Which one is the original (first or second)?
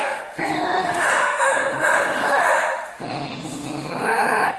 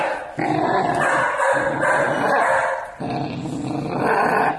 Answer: second